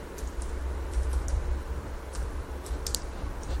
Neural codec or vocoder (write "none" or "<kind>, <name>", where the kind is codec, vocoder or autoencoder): vocoder, BigVGAN v2